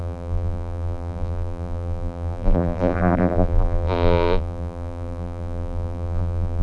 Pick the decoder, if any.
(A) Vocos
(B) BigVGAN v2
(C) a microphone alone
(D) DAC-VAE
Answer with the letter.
B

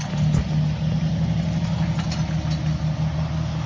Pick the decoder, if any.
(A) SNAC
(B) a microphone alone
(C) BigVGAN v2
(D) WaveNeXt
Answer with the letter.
B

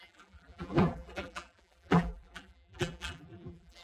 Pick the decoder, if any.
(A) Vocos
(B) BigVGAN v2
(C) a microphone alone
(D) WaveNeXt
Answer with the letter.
B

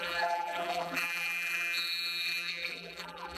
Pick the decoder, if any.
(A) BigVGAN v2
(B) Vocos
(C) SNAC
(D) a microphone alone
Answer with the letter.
A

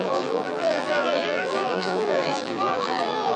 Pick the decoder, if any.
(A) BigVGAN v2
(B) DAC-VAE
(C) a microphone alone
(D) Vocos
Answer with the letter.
A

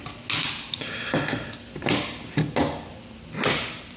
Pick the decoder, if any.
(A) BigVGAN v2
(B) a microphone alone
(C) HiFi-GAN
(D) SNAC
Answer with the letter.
B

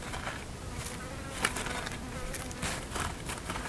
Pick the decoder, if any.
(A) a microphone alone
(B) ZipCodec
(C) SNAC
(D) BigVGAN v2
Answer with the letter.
A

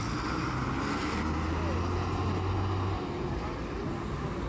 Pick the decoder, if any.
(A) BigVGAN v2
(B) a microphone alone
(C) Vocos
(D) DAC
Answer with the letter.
B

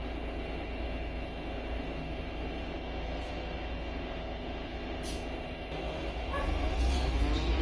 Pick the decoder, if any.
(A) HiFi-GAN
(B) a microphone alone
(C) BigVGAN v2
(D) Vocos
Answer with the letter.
B